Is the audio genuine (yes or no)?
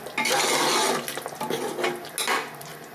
yes